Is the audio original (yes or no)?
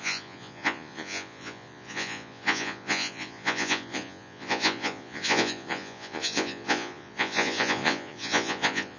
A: no